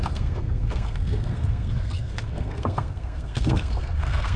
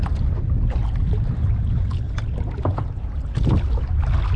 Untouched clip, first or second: second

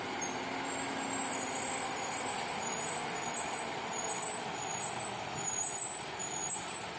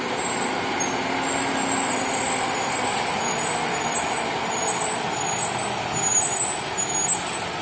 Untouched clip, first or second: second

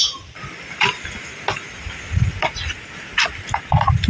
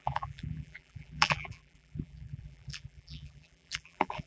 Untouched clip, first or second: first